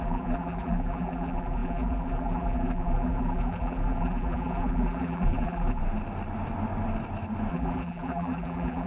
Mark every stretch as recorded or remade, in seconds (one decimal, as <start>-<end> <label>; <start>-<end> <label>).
0.0-5.8 remade; 5.8-7.5 recorded; 7.5-8.9 remade